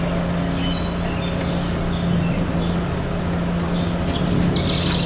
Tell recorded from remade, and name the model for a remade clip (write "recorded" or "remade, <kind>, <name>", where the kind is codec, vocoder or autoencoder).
recorded